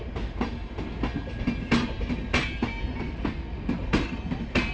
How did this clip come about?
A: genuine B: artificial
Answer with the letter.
A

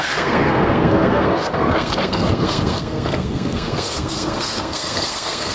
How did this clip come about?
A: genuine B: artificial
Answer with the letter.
B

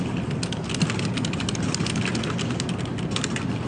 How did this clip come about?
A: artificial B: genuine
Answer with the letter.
B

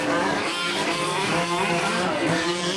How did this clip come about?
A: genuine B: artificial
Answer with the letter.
B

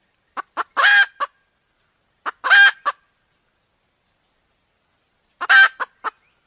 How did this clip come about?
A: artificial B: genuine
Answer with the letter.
B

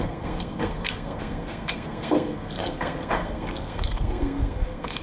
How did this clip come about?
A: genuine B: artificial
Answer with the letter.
B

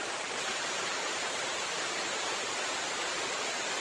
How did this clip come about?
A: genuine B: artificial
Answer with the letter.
A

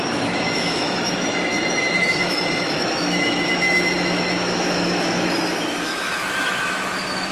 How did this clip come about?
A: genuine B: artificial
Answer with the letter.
B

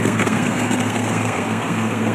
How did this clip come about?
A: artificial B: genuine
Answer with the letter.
A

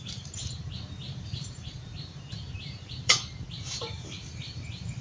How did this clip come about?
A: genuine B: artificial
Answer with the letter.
B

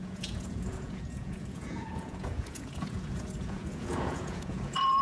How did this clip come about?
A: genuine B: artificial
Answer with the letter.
B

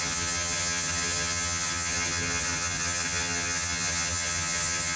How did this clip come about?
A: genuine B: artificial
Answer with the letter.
B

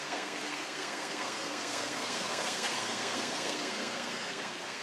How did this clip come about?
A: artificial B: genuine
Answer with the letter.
A